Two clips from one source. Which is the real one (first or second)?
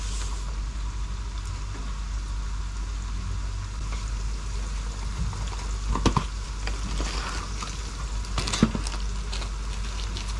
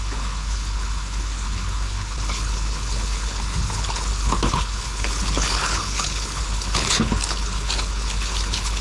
first